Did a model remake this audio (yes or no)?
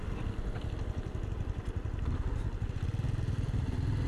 no